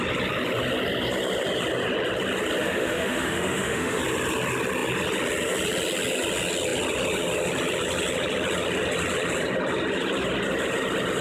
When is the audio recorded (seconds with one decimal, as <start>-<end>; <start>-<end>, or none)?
0.0-2.6; 4.0-11.2